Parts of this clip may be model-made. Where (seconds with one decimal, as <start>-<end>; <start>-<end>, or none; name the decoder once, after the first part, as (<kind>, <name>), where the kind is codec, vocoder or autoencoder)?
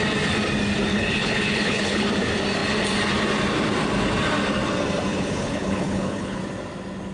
0.9-2.1 (codec, HILCodec); 5.1-6.4